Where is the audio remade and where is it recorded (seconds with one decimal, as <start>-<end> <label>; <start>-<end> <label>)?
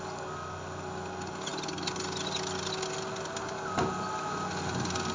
0.0-5.1 recorded